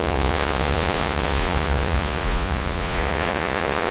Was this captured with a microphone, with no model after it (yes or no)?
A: no